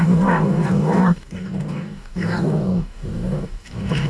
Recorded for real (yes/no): no